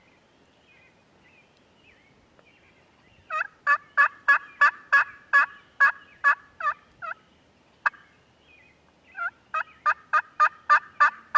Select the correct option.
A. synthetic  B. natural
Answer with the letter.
B